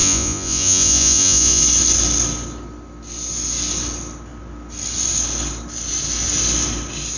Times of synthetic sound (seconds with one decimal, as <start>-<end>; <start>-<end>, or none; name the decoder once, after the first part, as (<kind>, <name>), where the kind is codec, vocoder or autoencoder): 0.0-1.6 (vocoder, Vocos)